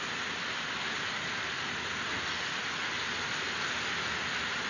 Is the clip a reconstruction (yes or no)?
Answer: no